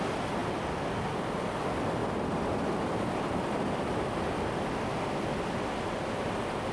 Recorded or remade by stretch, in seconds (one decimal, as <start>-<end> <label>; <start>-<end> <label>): 0.0-6.7 recorded